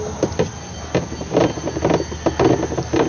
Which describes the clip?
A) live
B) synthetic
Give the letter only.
A